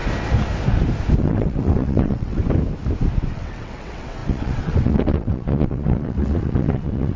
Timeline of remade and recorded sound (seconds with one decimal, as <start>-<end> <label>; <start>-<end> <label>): 0.0-1.2 recorded; 1.2-2.4 remade; 2.4-3.3 recorded; 3.3-7.2 remade